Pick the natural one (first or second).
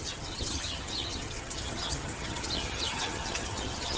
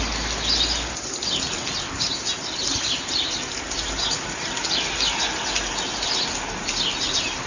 second